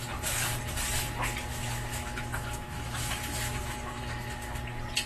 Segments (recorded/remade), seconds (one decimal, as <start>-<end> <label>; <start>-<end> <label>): 0.0-1.5 recorded; 1.5-4.6 remade; 4.6-5.1 recorded